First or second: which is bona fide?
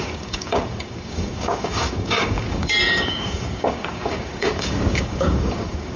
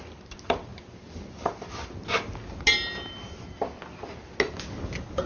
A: second